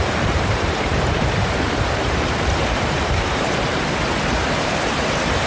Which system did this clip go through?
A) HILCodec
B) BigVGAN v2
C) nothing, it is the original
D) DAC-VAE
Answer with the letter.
B